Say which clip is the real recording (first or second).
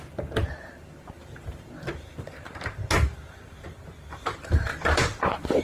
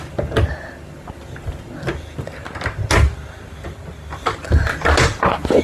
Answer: second